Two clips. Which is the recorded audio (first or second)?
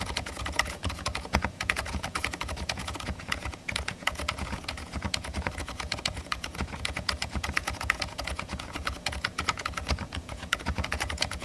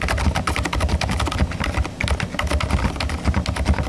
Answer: second